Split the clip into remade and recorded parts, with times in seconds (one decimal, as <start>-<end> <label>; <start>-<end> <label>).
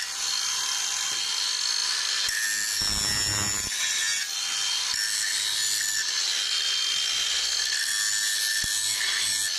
0.0-9.6 recorded